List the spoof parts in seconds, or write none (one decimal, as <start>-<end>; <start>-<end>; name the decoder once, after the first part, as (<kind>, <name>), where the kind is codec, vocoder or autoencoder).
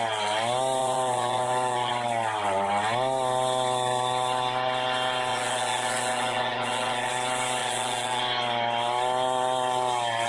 0.8-1.9 (vocoder, Vocos); 5.3-7.1; 7.6-8.2